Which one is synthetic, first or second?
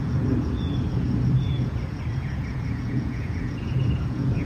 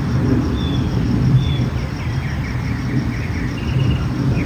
first